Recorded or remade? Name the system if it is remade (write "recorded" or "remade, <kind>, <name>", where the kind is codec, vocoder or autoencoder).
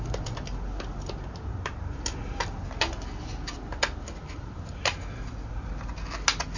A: recorded